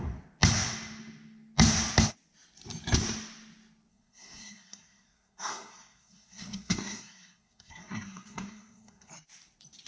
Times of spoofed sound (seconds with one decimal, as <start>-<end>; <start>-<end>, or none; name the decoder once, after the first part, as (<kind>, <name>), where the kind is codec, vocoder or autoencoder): 3.9-9.1 (codec, SNAC)

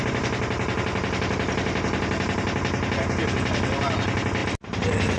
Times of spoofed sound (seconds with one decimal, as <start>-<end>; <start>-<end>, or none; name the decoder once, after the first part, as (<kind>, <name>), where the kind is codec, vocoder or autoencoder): none

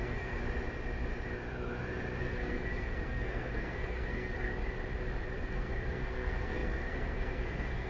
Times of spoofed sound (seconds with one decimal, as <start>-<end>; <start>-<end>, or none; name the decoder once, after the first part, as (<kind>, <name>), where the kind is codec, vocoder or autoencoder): 0.0-0.4 (codec, SNAC); 2.2-4.5; 5.5-7.9

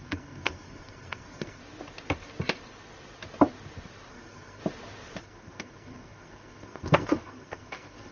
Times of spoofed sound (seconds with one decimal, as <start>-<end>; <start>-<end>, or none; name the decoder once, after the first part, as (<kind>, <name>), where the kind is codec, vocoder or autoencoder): 0.0-1.6 (codec, SNAC); 4.1-4.6; 5.2-8.1